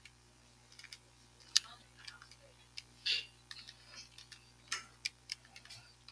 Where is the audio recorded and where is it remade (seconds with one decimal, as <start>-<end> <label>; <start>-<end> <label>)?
0.0-1.7 remade; 1.7-5.1 recorded; 5.1-6.1 remade